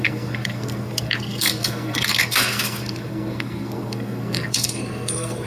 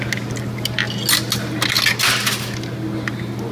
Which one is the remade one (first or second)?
first